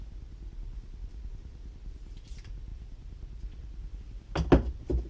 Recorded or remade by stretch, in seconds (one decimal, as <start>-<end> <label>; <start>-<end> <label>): 0.0-2.7 recorded; 2.7-4.0 remade; 4.0-5.1 recorded